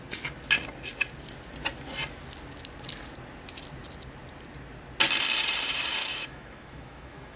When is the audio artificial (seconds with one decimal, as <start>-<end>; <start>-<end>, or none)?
6.0-7.4

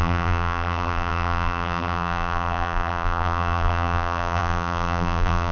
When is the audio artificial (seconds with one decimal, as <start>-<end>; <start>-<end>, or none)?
0.0-5.5

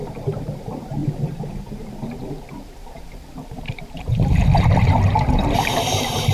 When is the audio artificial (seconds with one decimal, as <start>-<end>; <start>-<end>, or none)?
0.0-6.3

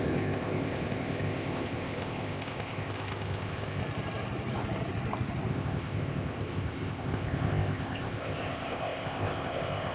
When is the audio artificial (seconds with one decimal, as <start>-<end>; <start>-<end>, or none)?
0.0-3.8; 5.5-9.9

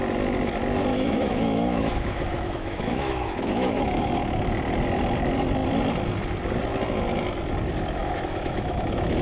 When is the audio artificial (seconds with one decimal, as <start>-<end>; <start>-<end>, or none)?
0.9-4.5; 8.0-9.2

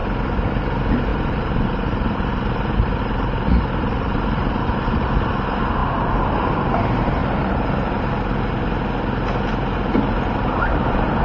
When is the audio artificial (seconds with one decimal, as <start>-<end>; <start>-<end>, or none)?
1.1-5.1; 7.2-8.0

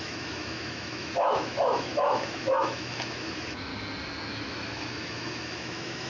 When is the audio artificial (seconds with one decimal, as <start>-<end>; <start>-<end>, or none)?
0.0-3.7; 4.3-6.1

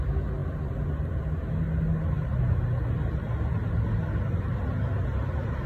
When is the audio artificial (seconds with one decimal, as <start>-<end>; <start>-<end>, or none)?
none